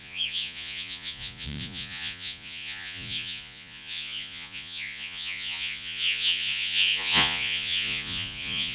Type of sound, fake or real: fake